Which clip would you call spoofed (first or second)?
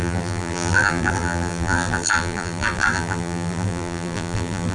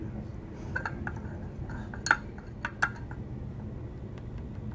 first